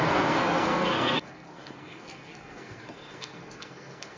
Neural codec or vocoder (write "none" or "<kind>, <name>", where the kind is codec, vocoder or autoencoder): codec, SNAC